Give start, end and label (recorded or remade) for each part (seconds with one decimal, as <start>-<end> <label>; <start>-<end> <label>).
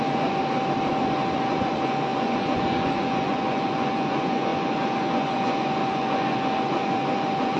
0.0-0.4 remade; 0.4-0.9 recorded; 0.9-7.6 remade